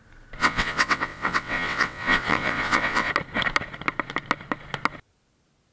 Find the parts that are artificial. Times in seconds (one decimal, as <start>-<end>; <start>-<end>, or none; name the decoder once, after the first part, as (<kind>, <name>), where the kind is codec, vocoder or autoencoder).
0.4-3.1 (vocoder, WaveNeXt)